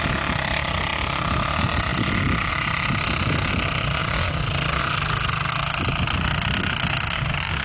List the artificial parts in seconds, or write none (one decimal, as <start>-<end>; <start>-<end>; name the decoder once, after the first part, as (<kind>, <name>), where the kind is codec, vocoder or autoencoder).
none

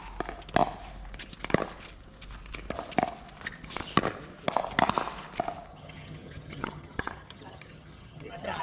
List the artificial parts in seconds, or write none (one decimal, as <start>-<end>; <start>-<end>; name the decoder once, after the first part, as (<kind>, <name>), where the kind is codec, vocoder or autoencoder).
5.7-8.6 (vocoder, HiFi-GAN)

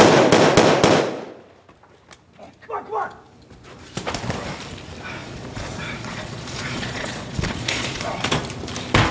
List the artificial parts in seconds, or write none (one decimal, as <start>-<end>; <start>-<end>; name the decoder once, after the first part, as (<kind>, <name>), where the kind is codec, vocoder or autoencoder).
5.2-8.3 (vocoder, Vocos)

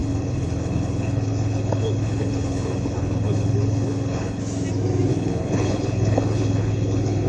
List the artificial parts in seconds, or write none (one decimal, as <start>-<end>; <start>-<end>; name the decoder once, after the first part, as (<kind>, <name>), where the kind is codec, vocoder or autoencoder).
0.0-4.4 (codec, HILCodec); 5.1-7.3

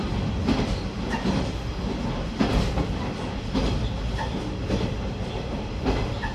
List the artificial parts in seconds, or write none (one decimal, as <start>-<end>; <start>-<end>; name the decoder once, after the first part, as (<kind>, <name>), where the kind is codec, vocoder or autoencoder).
none

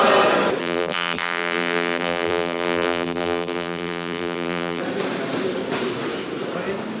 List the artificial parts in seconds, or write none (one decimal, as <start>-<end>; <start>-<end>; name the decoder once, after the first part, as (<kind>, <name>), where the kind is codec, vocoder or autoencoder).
0.6-4.8 (vocoder, BigVGAN v2)

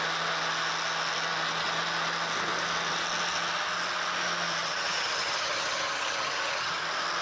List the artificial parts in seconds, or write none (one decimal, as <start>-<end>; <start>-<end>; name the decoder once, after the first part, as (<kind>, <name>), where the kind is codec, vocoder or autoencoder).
4.6-6.8 (vocoder, HiFi-GAN)

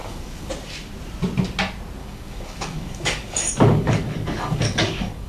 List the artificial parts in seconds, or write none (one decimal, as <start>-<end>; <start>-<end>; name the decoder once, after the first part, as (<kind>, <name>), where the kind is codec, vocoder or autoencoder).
0.0-0.5 (codec, DAC); 2.0-5.3